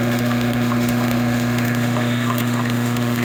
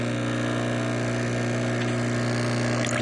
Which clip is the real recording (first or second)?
second